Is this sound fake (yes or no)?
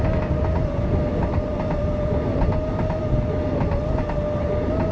no